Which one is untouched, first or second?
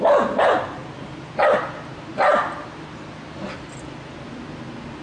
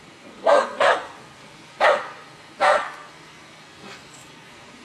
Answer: first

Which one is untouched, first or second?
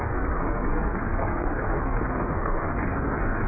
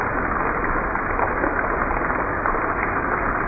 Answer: second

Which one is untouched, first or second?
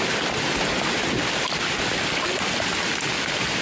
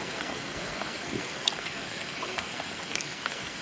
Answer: first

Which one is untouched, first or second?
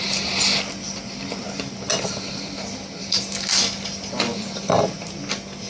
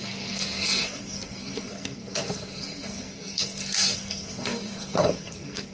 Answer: first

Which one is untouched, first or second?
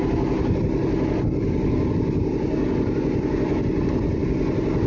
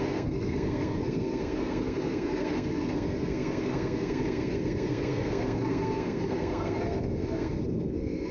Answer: first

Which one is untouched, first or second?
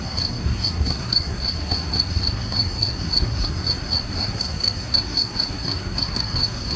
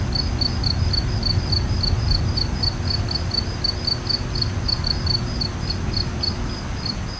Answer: second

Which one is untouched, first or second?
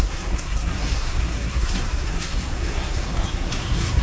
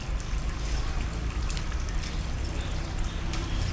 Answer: second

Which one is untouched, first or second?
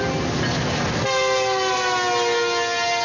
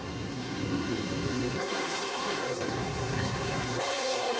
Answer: first